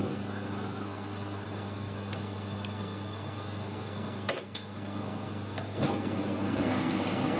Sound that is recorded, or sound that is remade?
remade